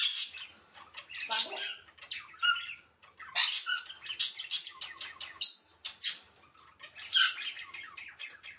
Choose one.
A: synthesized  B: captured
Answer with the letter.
B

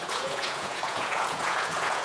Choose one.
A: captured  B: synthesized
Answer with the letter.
B